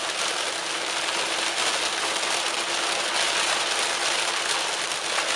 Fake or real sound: real